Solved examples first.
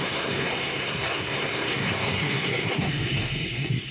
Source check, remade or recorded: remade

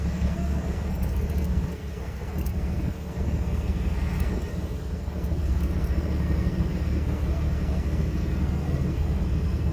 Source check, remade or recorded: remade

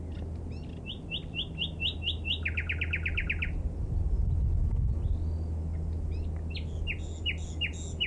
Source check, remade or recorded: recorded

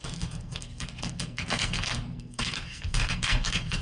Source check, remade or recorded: remade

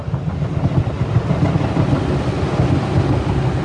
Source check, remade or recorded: recorded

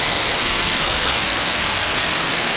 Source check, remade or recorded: remade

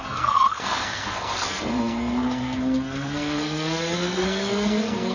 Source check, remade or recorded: remade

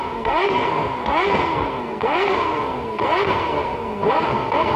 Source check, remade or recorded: remade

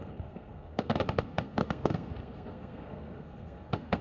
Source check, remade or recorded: remade